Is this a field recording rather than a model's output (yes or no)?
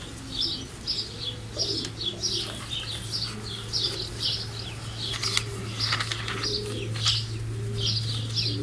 yes